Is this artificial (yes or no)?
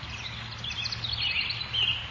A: no